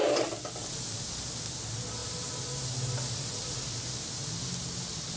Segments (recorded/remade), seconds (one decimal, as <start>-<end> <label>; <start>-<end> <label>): 0.0-5.2 recorded